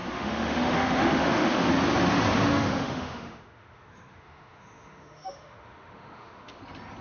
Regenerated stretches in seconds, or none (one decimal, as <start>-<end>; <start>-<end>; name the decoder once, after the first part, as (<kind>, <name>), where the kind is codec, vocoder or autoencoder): 0.0-1.7 (autoencoder, DAC-VAE); 2.5-6.6